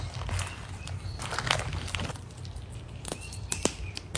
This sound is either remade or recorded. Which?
remade